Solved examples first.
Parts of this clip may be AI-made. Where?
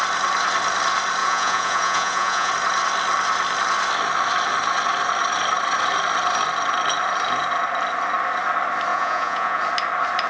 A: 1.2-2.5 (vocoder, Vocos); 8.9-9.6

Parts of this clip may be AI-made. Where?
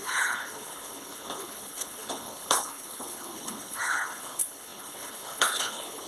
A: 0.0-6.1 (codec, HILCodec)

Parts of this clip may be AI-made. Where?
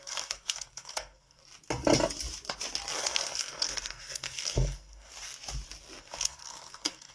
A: 0.0-1.4 (codec, SNAC); 3.0-5.1; 6.0-7.1